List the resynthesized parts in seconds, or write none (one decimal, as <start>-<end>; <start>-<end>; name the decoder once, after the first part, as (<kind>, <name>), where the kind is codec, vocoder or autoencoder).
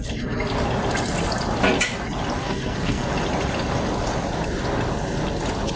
2.4-3.1 (codec, SNAC)